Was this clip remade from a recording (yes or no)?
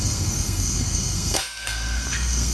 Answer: yes